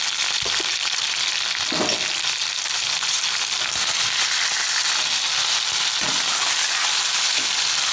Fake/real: real